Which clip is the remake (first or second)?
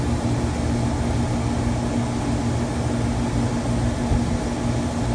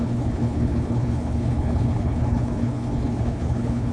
second